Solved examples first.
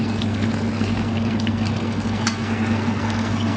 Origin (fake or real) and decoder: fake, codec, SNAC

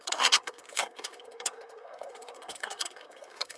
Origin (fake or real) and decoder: fake, codec, SNAC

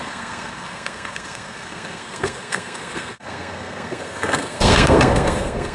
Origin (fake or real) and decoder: fake, codec, SNAC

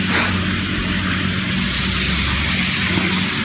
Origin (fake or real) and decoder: real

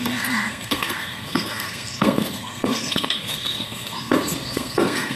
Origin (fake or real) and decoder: fake, codec, SNAC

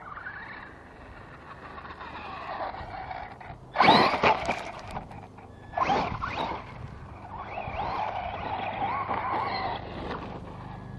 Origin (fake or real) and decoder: real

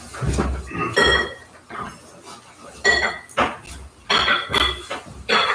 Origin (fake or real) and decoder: real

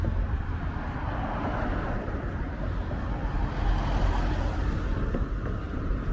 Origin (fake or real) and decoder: real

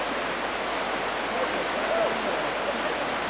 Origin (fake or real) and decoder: real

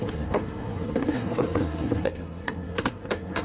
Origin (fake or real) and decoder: fake, codec, SNAC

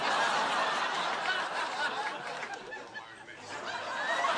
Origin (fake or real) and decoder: real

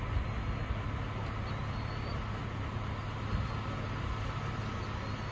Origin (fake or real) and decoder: real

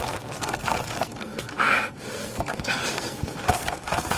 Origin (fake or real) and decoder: fake, codec, SNAC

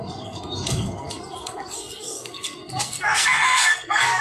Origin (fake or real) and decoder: fake, codec, SNAC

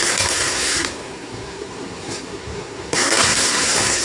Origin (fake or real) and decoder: fake, codec, SNAC